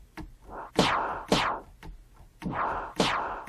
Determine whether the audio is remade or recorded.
recorded